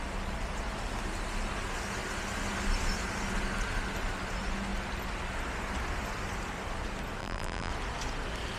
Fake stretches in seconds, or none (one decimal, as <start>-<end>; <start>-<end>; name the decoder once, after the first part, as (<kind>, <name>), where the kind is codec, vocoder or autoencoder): 7.2-7.7 (vocoder, BigVGAN v2)